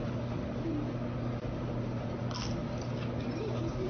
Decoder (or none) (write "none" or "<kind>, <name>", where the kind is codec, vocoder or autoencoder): none